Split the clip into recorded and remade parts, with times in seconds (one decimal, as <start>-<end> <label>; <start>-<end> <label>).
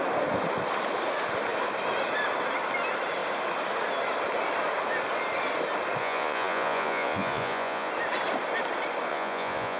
0.0-6.0 recorded; 6.0-7.9 remade; 7.9-9.1 recorded; 9.1-9.8 remade